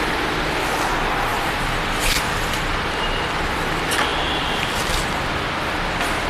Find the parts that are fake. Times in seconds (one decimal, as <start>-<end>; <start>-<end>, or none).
none